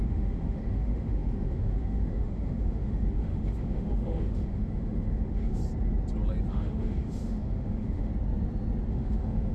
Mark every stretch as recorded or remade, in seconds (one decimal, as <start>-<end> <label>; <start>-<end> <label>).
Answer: 0.0-5.6 remade; 5.6-6.5 recorded; 6.5-8.1 remade; 8.1-8.9 recorded; 8.9-9.5 remade